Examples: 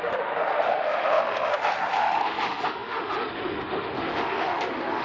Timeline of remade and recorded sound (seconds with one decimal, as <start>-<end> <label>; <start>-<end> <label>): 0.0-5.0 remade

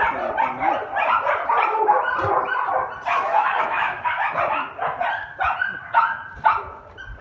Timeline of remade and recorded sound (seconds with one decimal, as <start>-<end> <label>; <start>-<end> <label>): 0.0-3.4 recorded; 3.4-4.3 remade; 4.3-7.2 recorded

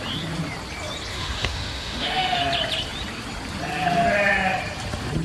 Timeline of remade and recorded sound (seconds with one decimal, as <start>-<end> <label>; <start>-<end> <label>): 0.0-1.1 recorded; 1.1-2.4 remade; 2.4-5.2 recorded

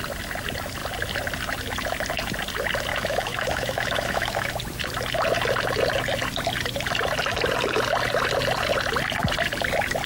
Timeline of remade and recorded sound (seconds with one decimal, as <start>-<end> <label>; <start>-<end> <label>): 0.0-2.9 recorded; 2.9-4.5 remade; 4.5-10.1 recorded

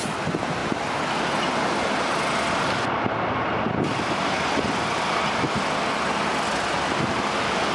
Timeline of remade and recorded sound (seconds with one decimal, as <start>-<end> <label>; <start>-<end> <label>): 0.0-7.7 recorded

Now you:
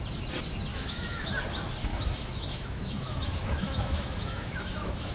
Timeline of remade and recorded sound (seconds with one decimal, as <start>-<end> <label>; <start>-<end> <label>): 0.0-0.7 recorded; 0.7-1.3 remade; 1.3-1.9 recorded; 1.9-5.1 remade

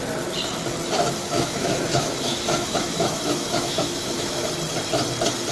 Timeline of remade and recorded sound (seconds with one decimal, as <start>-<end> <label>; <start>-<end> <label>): 0.0-1.2 recorded; 1.2-4.5 remade; 4.5-5.5 recorded